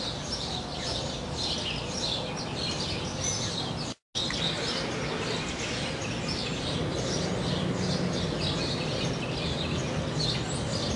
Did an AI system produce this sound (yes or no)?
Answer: no